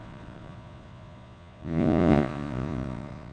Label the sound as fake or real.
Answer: fake